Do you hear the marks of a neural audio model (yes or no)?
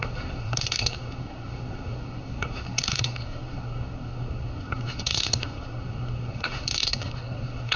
yes